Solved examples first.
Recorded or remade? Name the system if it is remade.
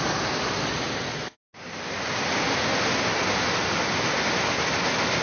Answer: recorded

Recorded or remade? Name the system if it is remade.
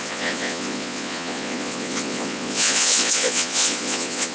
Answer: remade, vocoder, Vocos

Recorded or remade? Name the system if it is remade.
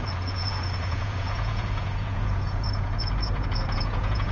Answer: remade, vocoder, Vocos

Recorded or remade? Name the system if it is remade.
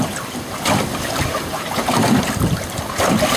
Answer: recorded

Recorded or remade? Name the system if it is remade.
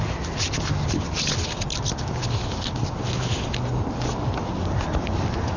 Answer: recorded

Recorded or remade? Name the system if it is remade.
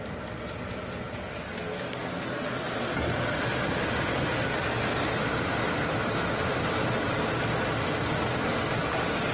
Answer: recorded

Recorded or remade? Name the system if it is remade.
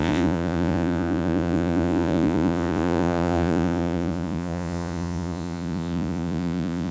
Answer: remade, vocoder, Vocos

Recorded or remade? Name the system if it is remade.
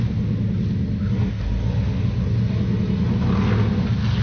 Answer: recorded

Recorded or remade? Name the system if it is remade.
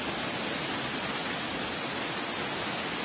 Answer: recorded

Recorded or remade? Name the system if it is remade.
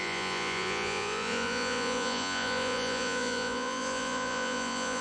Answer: remade, vocoder, Vocos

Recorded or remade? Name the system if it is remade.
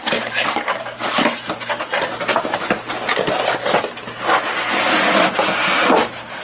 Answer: recorded